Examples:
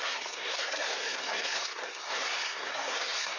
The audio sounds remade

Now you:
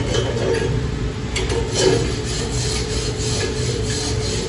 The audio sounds recorded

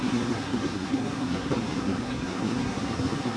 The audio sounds remade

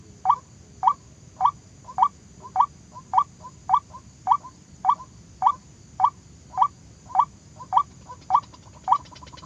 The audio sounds recorded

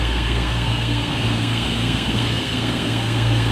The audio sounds remade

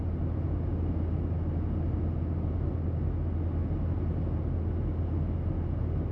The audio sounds recorded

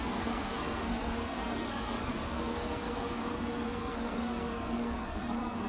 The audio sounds remade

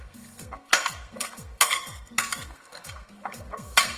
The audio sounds remade